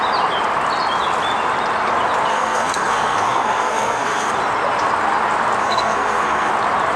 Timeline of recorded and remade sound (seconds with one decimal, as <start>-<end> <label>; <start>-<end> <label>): 0.0-2.3 recorded; 2.3-4.3 remade; 4.3-5.6 recorded; 5.6-6.5 remade; 6.5-7.0 recorded